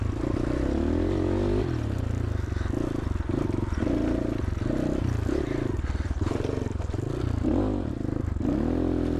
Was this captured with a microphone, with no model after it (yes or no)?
yes